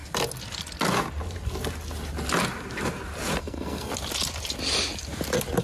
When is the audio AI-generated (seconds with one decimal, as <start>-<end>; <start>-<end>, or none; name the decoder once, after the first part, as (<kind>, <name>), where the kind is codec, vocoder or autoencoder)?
3.4-3.9 (codec, SNAC)